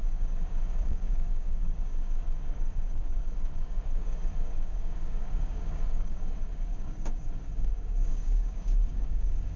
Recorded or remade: remade